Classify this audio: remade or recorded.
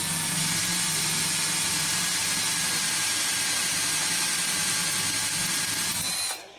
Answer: recorded